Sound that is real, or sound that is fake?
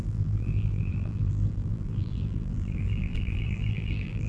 fake